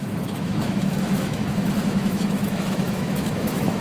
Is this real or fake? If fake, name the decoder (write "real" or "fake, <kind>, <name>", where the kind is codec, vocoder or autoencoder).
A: fake, autoencoder, DAC-VAE